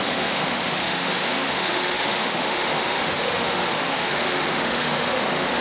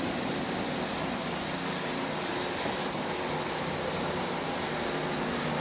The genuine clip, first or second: second